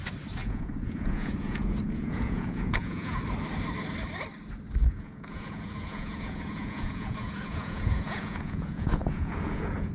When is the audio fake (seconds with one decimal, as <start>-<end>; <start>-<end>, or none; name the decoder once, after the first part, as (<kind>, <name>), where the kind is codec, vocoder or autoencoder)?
0.4-3.2 (vocoder, Vocos); 4.8-9.9